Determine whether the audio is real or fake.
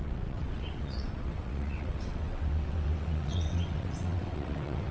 fake